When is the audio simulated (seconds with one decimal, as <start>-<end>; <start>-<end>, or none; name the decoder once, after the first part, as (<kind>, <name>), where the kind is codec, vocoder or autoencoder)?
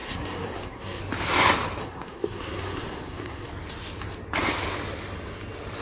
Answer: 0.0-1.0 (codec, SNAC); 1.8-3.5